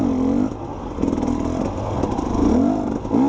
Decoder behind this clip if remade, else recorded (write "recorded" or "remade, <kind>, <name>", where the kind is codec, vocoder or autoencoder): recorded